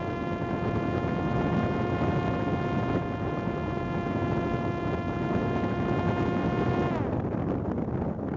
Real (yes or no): yes